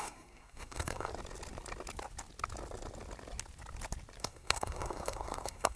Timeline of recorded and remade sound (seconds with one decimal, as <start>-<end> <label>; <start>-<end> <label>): 0.0-1.1 remade; 1.1-4.2 recorded; 4.2-5.8 remade